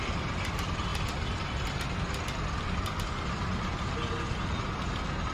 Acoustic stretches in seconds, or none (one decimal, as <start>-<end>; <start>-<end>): 0.0-5.3